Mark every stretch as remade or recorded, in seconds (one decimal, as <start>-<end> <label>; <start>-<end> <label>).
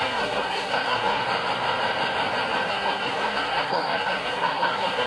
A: 0.0-1.2 remade; 1.2-2.7 recorded; 2.7-5.1 remade